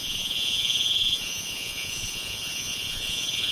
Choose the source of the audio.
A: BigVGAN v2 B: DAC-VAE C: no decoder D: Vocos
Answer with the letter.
D